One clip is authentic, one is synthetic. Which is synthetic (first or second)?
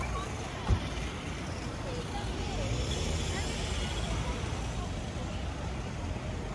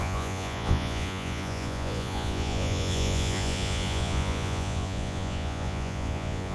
second